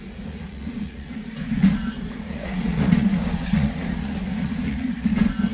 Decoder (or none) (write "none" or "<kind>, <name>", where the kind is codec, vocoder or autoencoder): vocoder, Vocos